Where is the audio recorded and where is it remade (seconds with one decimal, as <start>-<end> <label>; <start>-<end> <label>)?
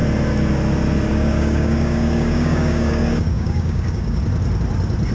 0.0-1.1 recorded; 1.1-4.2 remade; 4.2-5.1 recorded